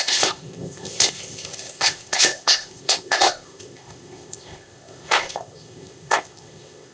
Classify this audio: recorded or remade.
remade